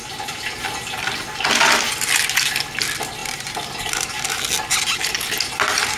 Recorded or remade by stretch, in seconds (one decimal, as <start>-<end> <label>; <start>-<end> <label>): 0.0-6.0 recorded